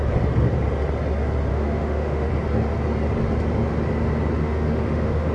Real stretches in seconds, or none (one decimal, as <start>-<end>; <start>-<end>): 0.0-1.5; 2.3-4.4